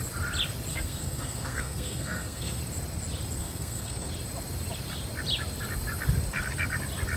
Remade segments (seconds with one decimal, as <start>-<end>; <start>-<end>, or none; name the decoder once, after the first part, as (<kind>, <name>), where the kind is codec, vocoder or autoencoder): 0.7-2.6 (codec, SNAC); 3.4-4.1